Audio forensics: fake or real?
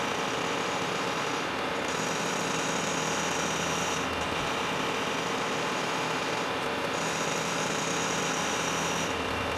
real